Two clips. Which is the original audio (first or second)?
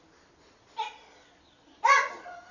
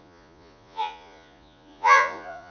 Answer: first